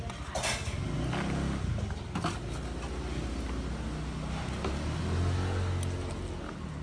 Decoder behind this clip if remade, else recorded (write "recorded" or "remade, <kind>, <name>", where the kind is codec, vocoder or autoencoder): recorded